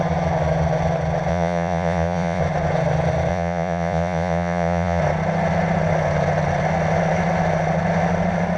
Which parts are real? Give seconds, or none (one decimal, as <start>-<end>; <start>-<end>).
0.0-1.3; 2.4-3.3; 5.0-8.6